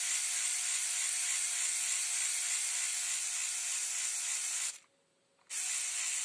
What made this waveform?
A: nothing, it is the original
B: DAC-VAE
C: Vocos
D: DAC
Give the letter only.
A